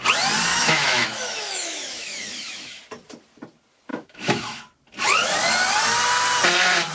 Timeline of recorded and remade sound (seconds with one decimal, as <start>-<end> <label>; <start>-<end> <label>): 0.0-0.5 recorded; 0.5-2.8 remade; 2.8-3.9 recorded; 3.9-4.6 remade; 4.6-6.9 recorded